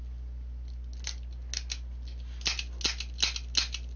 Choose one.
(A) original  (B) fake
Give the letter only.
A